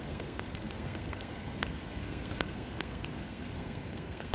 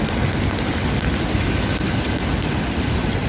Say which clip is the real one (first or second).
second